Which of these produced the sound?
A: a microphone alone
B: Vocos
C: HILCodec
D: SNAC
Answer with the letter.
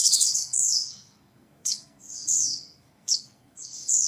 D